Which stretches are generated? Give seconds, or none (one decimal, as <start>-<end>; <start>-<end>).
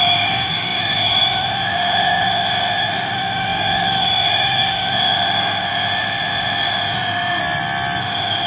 0.0-7.4; 8.0-8.5